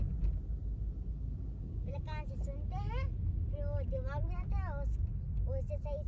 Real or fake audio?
real